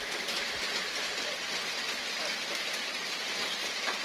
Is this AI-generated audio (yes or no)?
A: no